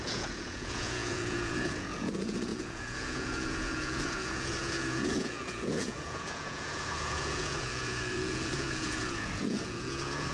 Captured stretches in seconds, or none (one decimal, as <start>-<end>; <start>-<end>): none